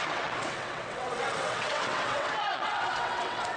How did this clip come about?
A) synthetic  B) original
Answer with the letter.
A